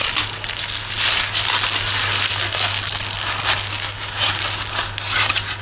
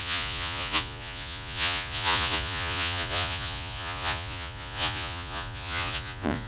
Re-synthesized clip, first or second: second